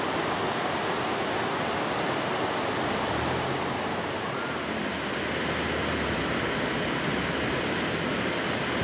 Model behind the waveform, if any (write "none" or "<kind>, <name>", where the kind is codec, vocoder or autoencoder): none